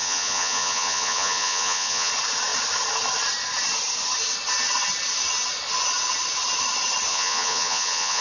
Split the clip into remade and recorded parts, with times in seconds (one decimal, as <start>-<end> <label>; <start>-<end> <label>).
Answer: 0.0-2.1 remade; 2.1-7.1 recorded; 7.1-8.2 remade